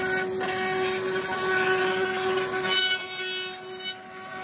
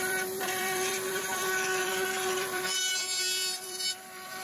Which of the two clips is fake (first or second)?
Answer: second